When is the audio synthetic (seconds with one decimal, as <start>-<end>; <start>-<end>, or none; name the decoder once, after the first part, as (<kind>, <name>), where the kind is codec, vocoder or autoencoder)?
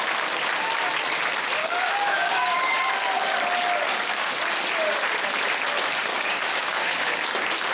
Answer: 1.6-2.9 (codec, DAC); 3.9-4.4; 6.1-7.3